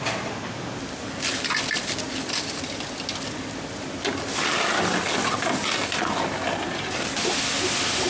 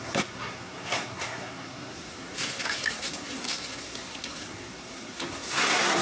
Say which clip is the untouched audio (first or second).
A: first